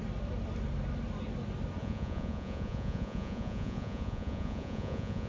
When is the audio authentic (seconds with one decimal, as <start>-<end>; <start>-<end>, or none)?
0.0-1.8